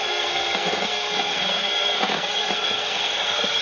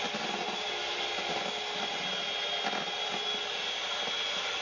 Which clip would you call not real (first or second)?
first